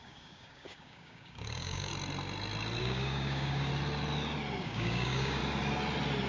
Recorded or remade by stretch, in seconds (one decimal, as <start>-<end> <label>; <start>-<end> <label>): 0.0-1.9 remade; 1.9-2.8 recorded; 2.8-3.7 remade; 3.7-4.6 recorded; 4.6-5.4 remade; 5.4-6.3 recorded